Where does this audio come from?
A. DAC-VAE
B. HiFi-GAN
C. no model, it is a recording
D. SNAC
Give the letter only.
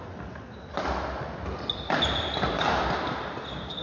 C